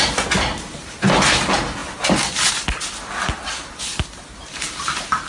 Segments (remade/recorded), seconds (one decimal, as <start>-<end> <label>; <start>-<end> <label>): 0.0-5.3 recorded